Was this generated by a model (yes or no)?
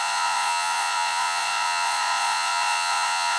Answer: yes